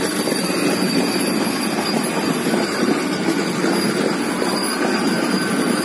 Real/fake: real